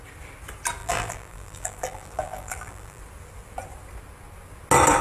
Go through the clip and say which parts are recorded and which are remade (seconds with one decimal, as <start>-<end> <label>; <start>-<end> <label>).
0.0-0.8 recorded; 0.8-3.0 remade; 3.0-5.0 recorded